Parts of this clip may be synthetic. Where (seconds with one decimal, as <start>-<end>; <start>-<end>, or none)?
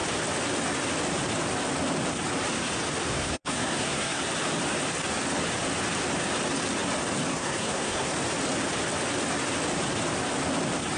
3.1-4.2; 7.3-8.1